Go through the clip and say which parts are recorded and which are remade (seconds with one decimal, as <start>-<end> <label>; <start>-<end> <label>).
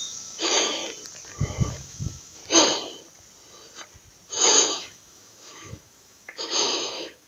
0.0-0.8 remade; 0.8-1.7 recorded; 1.7-2.4 remade; 2.4-4.3 recorded; 4.3-7.3 remade